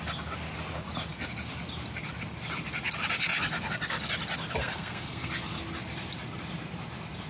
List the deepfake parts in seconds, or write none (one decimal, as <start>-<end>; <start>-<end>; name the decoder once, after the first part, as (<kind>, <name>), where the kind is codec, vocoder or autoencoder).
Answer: 4.6-5.3 (codec, SNAC)